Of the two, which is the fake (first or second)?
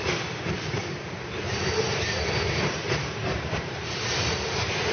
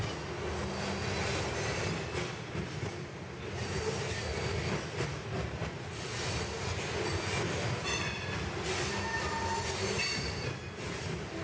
first